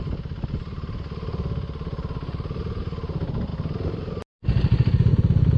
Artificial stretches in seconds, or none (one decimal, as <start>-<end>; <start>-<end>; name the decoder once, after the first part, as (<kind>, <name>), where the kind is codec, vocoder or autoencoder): none